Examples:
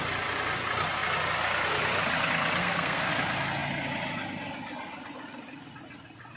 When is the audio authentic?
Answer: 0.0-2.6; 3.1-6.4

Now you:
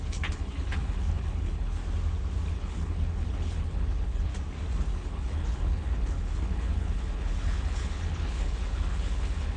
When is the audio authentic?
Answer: 1.8-2.5; 4.3-4.9